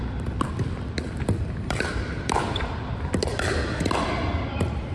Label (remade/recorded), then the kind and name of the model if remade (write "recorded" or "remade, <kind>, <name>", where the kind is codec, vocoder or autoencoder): remade, vocoder, BigVGAN v2